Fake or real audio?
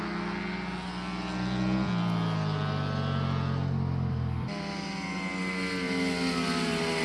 real